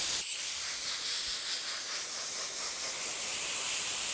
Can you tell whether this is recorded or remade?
recorded